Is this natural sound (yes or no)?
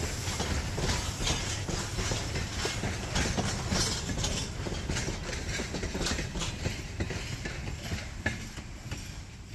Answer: yes